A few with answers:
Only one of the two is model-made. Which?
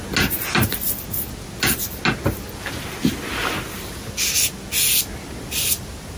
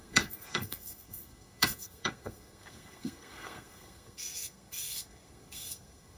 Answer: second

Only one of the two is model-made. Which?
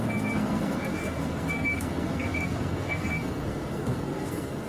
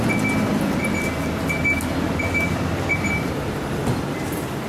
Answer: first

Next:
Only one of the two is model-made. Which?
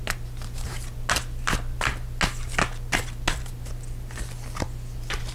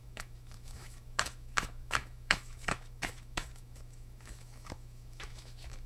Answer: second